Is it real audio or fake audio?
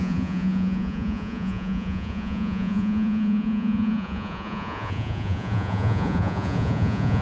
fake